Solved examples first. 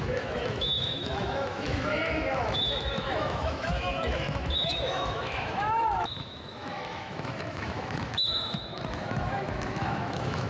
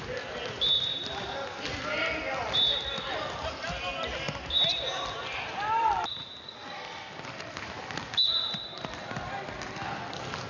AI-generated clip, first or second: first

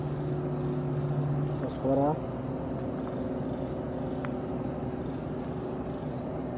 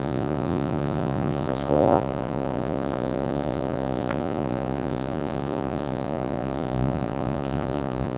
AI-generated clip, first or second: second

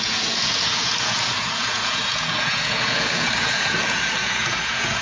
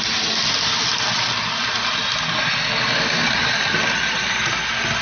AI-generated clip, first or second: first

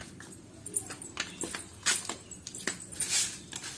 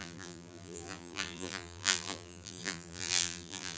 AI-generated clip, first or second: second